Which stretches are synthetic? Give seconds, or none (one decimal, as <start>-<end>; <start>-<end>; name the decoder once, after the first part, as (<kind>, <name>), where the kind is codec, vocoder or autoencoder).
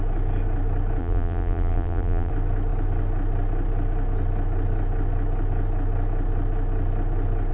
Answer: 1.0-2.3 (vocoder, BigVGAN v2)